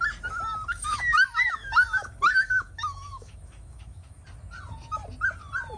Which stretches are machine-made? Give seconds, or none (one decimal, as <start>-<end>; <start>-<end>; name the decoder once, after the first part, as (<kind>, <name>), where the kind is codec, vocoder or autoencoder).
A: 0.7-4.2 (autoencoder, DAC-VAE)